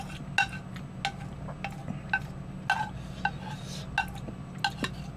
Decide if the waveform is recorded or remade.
recorded